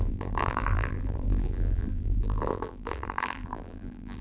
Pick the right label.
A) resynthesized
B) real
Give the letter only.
A